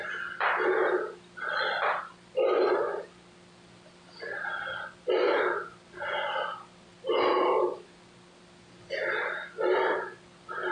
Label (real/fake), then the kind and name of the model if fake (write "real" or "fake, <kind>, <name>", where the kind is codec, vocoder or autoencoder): real